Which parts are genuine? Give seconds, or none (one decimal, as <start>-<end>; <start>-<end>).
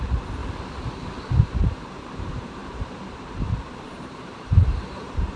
0.4-1.4